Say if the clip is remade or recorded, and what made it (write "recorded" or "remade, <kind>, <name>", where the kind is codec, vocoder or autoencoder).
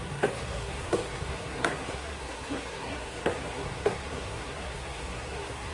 remade, codec, SNAC